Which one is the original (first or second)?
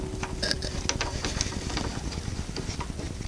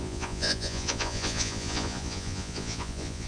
first